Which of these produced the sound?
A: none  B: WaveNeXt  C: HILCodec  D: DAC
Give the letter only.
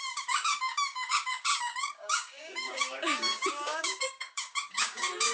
D